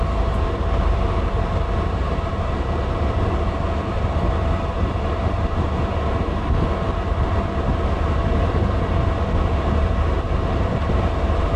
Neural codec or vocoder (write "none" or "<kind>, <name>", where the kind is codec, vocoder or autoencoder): vocoder, BigVGAN v2